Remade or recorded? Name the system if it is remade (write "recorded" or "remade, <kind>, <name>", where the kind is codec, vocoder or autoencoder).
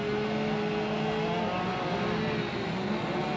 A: recorded